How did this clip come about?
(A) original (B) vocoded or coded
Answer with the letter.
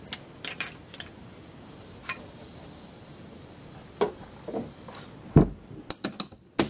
A